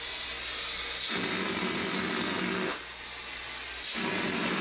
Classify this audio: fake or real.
real